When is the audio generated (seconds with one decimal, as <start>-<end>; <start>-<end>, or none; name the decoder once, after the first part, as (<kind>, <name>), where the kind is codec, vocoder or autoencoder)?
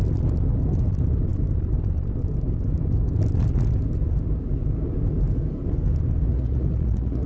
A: 6.3-7.3 (vocoder, Vocos)